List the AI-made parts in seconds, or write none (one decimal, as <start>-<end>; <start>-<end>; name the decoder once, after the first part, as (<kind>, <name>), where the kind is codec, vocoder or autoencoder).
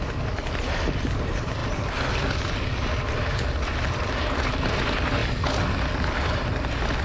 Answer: none